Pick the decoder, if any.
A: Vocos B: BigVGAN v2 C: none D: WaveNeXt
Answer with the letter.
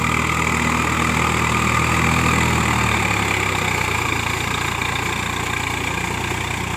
C